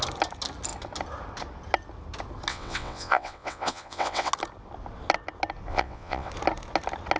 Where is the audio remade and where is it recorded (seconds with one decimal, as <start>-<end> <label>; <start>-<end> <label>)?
0.0-2.5 recorded; 2.5-4.3 remade; 4.3-5.7 recorded; 5.7-6.3 remade; 6.3-7.2 recorded